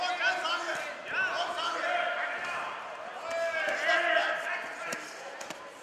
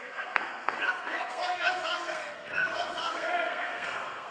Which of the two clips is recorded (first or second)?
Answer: first